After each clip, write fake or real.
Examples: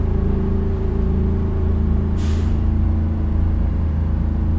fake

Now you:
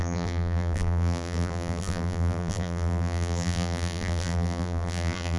fake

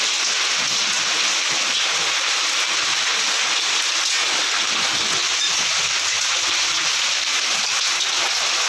real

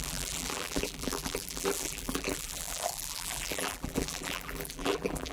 fake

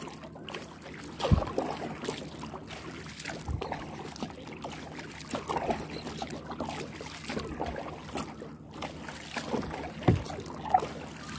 real